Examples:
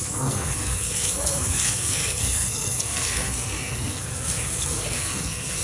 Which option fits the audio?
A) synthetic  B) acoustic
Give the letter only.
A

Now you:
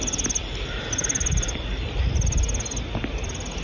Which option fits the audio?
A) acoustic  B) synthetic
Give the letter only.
A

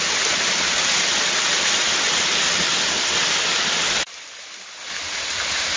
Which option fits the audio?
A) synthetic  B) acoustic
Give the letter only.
B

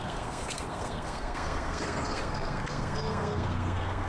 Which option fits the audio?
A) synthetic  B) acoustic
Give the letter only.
A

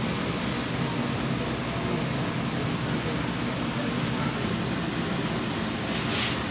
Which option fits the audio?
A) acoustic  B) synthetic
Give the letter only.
A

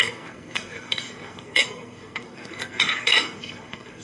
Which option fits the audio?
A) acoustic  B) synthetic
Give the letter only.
B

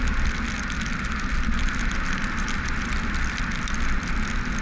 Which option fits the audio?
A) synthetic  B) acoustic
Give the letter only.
B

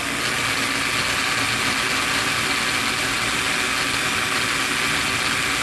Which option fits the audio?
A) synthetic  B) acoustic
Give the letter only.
B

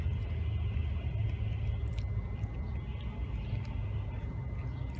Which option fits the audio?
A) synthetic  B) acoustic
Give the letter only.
B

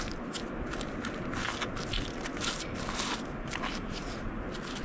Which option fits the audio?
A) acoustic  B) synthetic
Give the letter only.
A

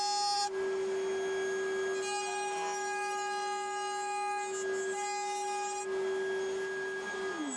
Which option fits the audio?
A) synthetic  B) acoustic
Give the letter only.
B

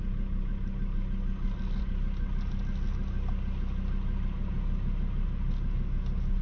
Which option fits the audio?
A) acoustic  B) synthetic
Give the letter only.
A